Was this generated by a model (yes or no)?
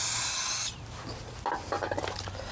no